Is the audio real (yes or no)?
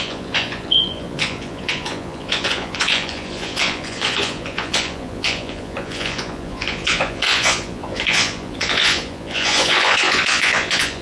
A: no